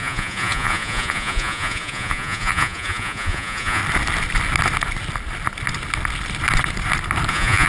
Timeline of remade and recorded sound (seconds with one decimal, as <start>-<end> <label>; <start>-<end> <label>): 0.0-3.8 remade; 3.8-7.3 recorded; 7.3-7.7 remade